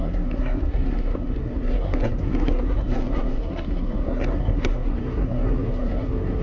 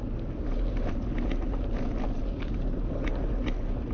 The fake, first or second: first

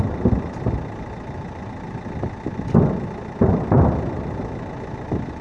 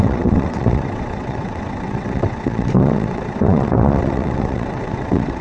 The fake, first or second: second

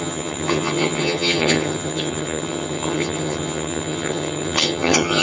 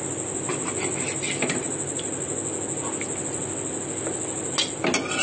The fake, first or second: first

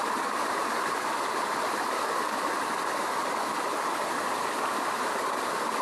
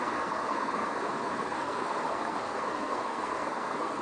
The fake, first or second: second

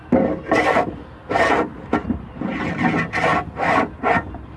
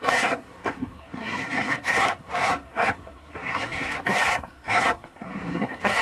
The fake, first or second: second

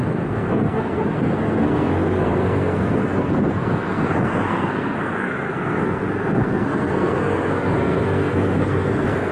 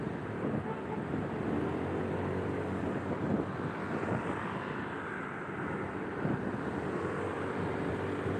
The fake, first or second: first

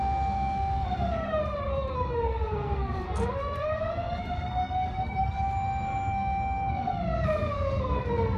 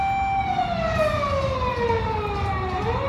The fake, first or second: first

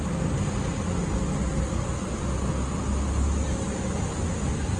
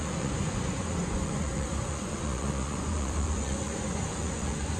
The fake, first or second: second